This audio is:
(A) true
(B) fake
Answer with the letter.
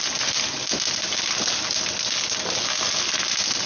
A